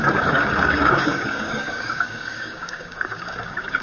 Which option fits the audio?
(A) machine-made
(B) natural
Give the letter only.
A